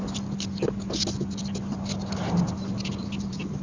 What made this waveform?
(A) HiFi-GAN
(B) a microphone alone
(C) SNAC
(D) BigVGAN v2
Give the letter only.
B